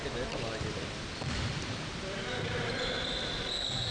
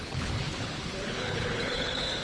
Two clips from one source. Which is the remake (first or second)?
second